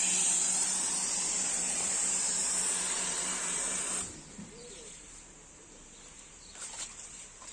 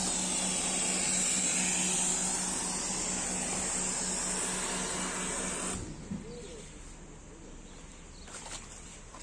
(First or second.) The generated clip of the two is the first